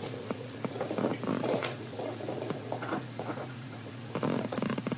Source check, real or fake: fake